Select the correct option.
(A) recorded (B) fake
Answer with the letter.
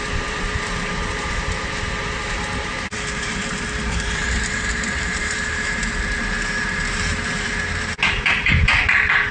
B